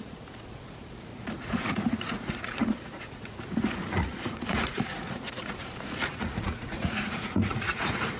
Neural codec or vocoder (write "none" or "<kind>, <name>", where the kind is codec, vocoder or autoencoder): vocoder, Vocos